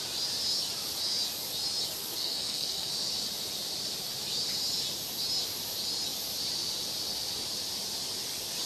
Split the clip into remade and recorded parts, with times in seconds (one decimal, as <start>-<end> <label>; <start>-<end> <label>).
0.0-2.0 recorded; 2.0-2.9 remade; 2.9-8.7 recorded